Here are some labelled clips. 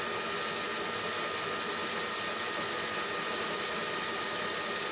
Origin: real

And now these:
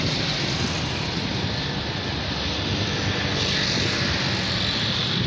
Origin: real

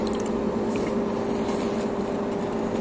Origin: real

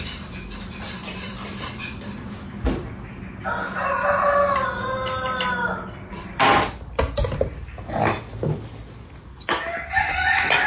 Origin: real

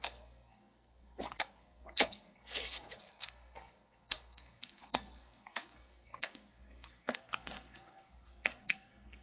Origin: fake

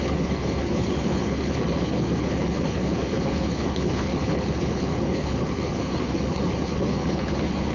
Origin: fake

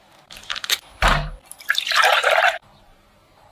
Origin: real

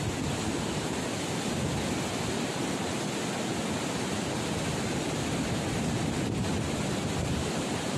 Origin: real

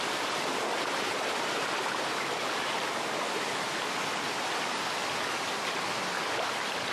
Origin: real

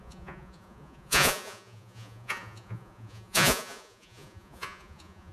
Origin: fake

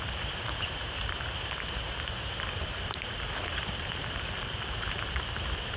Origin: fake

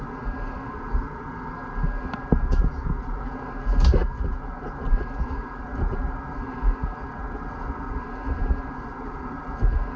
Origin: real